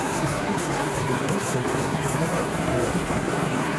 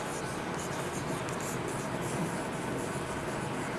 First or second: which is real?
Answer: second